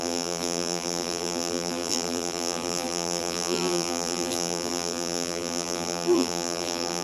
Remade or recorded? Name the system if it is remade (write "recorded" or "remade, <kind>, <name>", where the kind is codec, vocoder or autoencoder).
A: remade, vocoder, BigVGAN v2